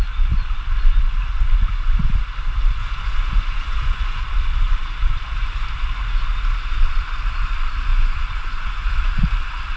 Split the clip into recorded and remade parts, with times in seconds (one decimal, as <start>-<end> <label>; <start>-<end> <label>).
0.0-2.8 recorded; 2.8-4.2 remade; 4.2-7.9 recorded; 7.9-8.9 remade; 8.9-9.8 recorded